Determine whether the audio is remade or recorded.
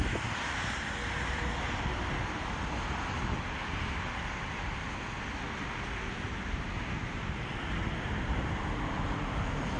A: recorded